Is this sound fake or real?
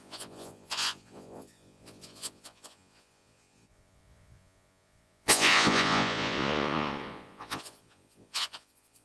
fake